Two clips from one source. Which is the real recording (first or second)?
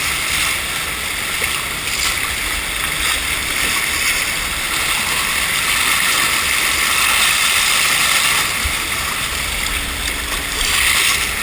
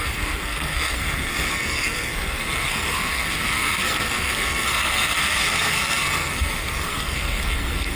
first